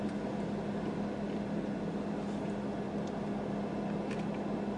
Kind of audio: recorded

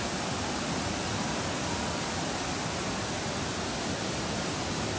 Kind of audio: recorded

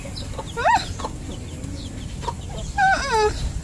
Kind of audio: remade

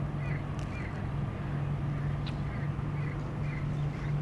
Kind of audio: recorded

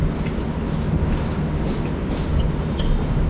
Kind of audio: recorded